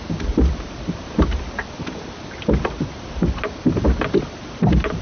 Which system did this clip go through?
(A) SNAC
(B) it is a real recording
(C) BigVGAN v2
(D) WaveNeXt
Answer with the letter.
B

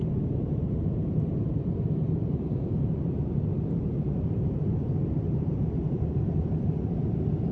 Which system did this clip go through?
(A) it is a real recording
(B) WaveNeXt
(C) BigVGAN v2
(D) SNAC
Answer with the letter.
C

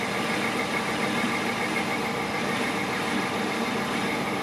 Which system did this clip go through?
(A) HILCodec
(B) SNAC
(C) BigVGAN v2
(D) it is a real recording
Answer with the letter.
C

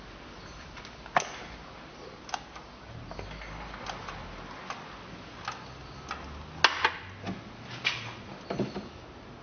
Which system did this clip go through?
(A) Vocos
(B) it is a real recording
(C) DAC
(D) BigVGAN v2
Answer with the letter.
B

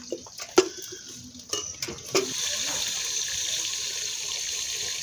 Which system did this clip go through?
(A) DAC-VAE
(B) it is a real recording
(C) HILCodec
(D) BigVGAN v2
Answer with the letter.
B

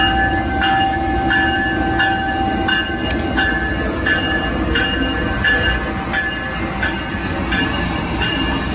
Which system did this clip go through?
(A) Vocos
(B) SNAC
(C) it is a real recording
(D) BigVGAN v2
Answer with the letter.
C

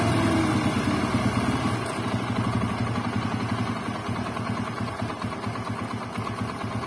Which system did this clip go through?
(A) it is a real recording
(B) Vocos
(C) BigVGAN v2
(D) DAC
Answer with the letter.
A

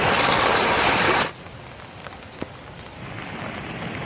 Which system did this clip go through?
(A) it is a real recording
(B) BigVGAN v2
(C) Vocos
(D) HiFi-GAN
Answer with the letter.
A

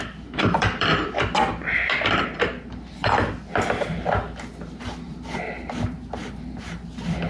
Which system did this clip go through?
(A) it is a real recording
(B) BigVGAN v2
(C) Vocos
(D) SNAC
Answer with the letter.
B